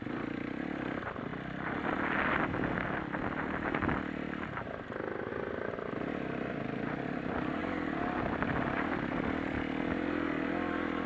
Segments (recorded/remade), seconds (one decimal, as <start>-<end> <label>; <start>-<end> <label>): 0.0-1.3 remade; 1.3-4.0 recorded; 4.0-11.1 remade